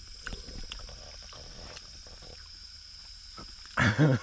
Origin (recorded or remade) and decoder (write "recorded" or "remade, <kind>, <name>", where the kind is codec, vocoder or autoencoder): recorded